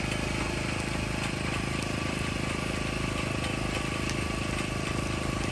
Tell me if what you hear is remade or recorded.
recorded